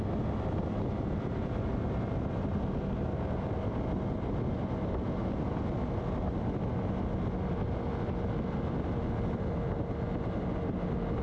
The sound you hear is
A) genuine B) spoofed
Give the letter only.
A